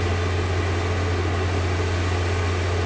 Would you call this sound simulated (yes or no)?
no